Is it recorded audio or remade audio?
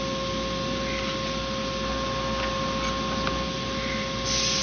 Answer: recorded